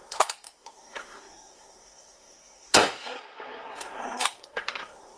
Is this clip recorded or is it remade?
remade